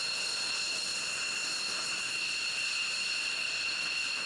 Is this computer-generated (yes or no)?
no